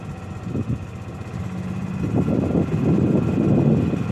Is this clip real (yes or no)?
yes